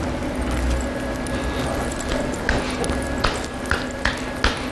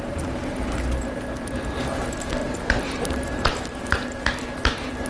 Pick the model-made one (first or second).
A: second